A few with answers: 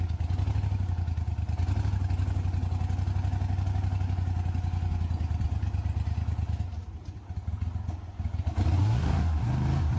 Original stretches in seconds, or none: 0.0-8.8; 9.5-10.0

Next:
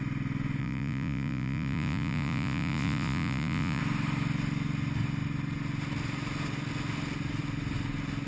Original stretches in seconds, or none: 0.0-0.6; 3.8-8.3

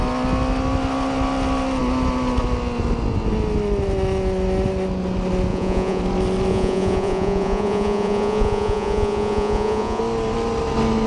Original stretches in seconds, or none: 0.0-5.5; 6.0-6.5; 10.0-11.1

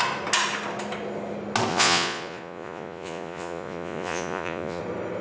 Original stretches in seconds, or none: 0.0-1.7; 4.8-5.2

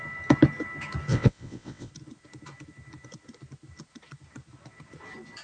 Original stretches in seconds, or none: 0.0-1.1; 1.9-5.4

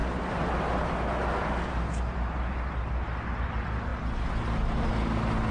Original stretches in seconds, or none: 0.0-5.5

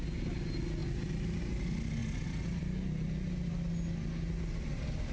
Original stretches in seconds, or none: 0.0-5.1

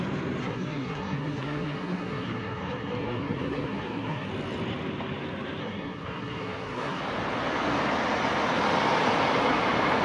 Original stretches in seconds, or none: 0.0-0.4; 4.3-5.6; 7.0-10.0